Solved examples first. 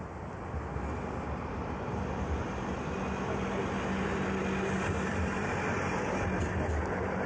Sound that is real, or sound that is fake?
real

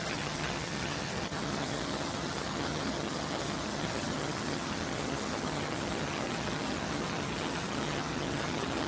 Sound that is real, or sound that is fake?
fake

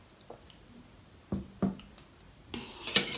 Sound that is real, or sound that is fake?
real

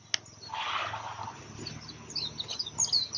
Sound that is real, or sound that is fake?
real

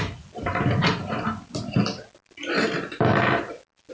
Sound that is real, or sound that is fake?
real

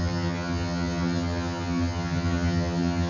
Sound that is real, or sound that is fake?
fake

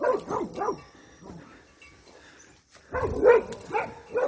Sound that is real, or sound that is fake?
real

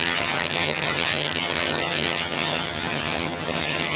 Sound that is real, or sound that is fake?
fake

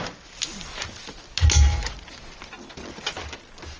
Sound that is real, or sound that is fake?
real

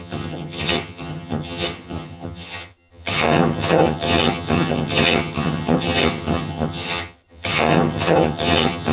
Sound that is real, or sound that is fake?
fake